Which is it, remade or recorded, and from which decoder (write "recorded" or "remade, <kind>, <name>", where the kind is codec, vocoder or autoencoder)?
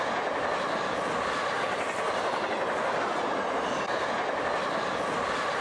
recorded